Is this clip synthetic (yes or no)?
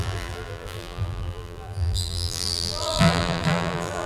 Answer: yes